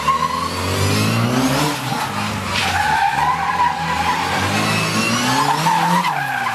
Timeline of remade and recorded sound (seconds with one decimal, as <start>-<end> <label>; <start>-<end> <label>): 0.0-2.6 recorded; 2.6-3.1 remade; 3.1-6.5 recorded

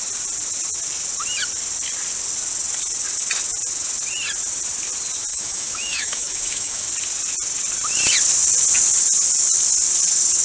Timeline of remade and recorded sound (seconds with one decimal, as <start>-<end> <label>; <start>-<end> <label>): 0.0-5.3 recorded; 5.3-6.9 remade; 6.9-10.4 recorded

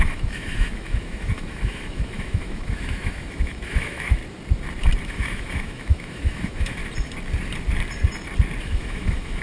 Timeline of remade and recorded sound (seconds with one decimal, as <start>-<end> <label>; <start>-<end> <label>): 0.0-4.2 remade; 4.2-5.0 recorded; 5.0-6.8 remade; 6.8-8.6 recorded; 8.6-9.4 remade

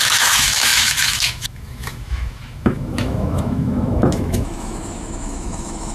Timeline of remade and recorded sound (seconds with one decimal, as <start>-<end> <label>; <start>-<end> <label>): 0.0-5.9 remade